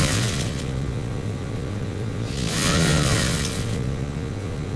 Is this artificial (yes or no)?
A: yes